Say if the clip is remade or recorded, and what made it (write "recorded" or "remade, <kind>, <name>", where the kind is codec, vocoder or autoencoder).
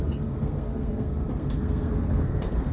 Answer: remade, codec, SNAC